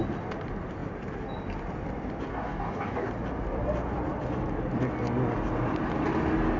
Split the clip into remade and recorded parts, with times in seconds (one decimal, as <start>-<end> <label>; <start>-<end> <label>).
0.0-2.3 recorded; 2.3-3.1 remade; 3.1-6.6 recorded